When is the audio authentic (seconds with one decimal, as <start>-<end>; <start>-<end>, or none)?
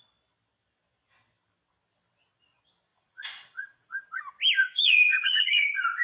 0.0-2.9; 3.9-4.6; 5.5-6.0